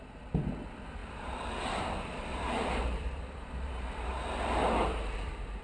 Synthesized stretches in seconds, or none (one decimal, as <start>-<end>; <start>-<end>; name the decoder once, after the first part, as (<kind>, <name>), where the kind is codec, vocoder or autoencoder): 1.0-1.6 (vocoder, BigVGAN v2); 2.3-4.1; 4.9-5.6